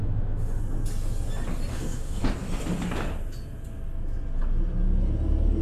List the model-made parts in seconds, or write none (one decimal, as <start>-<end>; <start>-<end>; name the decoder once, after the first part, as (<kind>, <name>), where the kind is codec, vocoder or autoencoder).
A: 0.0-0.6 (autoencoder, DAC-VAE); 1.7-2.2